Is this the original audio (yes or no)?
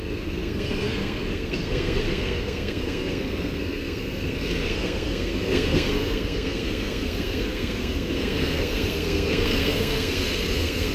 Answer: no